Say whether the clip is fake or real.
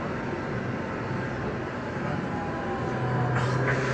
real